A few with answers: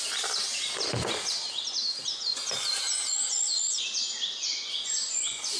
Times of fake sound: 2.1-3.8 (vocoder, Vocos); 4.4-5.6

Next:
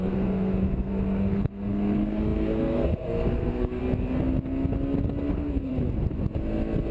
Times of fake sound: 0.0-3.8 (codec, SNAC); 5.3-5.7